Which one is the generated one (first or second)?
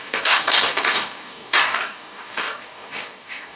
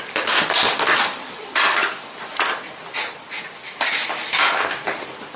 first